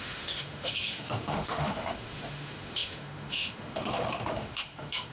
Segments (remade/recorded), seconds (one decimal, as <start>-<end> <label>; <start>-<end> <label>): 0.0-5.1 remade